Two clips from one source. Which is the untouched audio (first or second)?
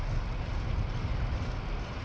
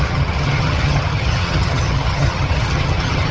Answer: first